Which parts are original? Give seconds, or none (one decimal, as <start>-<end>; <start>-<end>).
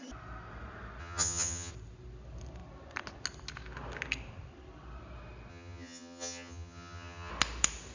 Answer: 0.0-1.0; 1.7-5.5; 7.3-7.9